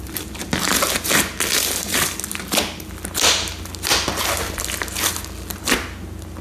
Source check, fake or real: real